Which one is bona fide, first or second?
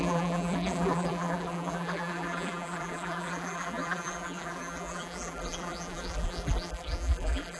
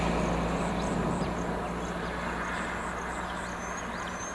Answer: second